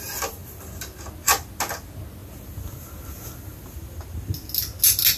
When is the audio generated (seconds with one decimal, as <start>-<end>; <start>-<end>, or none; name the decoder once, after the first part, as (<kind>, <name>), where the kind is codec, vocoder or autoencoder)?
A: none